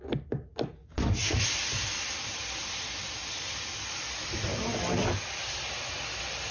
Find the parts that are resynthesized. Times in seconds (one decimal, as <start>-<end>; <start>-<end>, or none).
0.8-1.4